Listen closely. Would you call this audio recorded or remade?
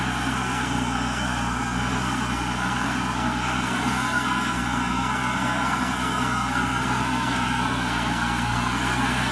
remade